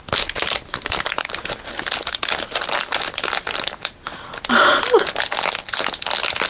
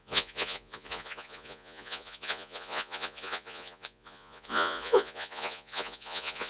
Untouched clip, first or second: first